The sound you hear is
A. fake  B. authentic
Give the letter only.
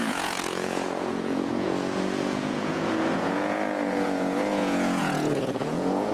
A